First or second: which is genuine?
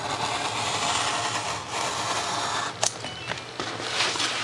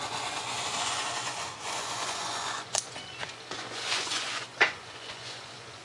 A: first